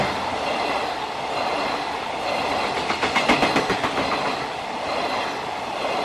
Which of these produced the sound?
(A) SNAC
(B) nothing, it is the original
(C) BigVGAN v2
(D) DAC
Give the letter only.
B